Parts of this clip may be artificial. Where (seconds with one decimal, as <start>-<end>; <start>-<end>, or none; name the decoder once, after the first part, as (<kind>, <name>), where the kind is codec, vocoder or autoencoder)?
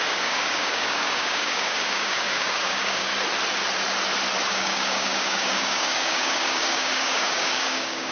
0.0-3.1 (codec, DAC); 4.5-8.1